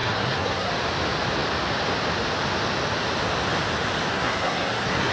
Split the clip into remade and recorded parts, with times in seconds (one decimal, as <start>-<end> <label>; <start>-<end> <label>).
0.0-0.7 remade; 0.7-4.1 recorded; 4.1-5.1 remade